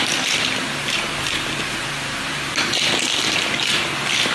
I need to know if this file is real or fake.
real